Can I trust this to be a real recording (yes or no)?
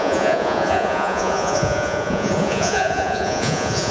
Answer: no